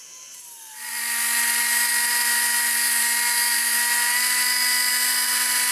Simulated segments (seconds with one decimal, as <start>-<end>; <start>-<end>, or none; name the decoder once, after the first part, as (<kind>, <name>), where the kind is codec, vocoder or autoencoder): none